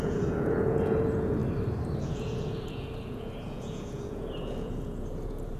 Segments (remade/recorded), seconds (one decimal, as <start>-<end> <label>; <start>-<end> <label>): 0.0-1.4 remade; 1.4-2.0 recorded; 2.0-5.6 remade